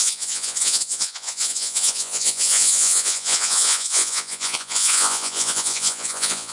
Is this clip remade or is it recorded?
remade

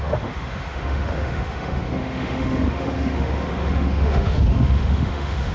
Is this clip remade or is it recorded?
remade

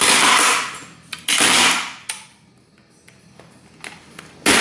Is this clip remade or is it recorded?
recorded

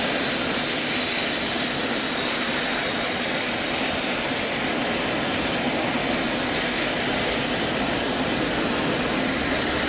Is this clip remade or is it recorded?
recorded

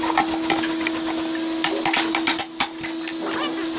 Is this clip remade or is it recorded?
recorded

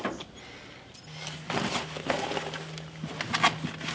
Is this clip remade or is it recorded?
recorded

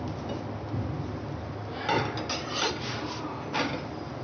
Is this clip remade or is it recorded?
recorded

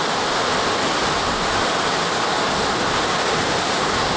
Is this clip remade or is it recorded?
recorded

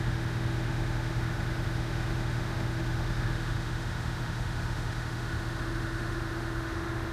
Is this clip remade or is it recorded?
remade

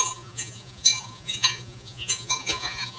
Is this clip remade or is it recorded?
remade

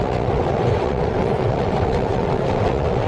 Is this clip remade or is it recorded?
remade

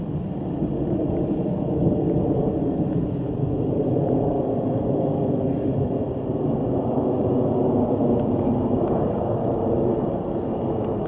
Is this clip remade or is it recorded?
recorded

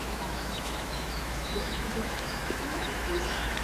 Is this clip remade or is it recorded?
remade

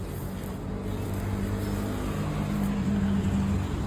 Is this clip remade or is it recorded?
recorded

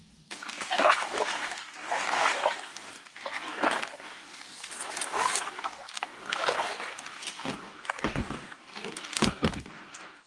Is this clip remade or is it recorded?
remade